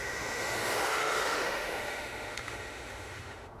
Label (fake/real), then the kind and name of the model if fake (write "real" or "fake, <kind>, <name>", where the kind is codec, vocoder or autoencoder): fake, autoencoder, DAC-VAE